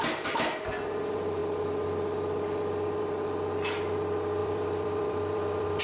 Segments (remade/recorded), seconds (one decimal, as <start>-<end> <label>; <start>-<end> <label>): 0.0-4.4 recorded; 4.4-5.8 remade